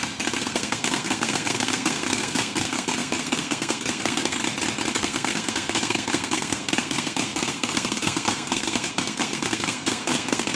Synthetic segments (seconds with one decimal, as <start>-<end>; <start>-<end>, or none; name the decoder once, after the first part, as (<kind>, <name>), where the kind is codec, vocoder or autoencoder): 0.0-4.4 (codec, SNAC); 4.9-10.5